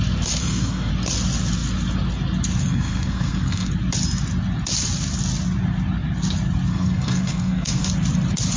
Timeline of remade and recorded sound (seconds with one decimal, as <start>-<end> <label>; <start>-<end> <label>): 0.0-0.4 recorded; 0.4-0.9 remade; 0.9-2.6 recorded; 2.6-3.7 remade; 3.7-6.7 recorded; 6.7-7.9 remade; 7.9-8.6 recorded